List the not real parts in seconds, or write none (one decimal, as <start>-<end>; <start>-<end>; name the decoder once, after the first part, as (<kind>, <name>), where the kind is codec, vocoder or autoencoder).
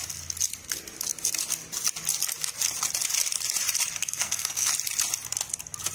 4.0-4.7 (codec, SNAC)